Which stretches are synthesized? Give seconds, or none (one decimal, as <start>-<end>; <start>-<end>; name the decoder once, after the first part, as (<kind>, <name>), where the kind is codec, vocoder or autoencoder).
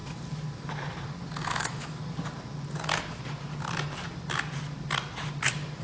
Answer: 1.5-2.0 (autoencoder, DAC-VAE)